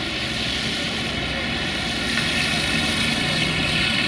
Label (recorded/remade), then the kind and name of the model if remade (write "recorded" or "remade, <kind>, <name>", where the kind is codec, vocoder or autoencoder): recorded